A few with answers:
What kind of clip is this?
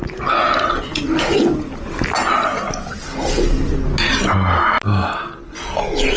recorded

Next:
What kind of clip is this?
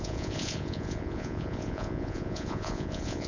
remade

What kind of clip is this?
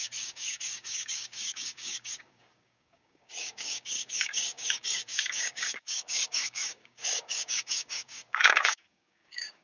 remade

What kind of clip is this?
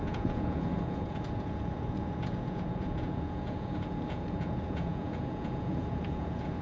remade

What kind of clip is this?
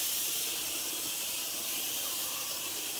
remade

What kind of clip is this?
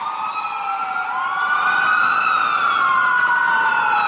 recorded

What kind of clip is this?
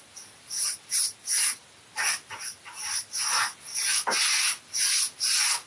recorded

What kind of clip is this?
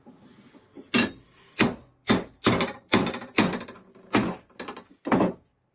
recorded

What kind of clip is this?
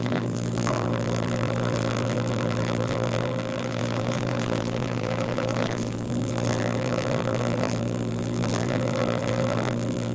remade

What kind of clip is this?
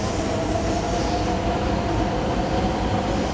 recorded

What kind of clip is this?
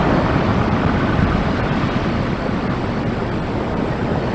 recorded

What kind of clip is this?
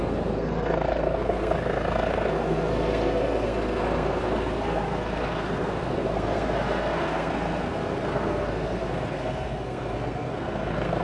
remade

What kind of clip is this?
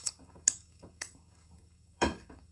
remade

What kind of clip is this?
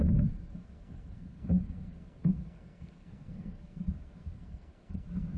remade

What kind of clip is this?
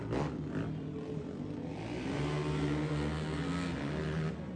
recorded